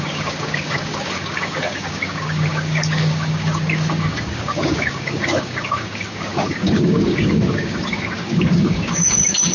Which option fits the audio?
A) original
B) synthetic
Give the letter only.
B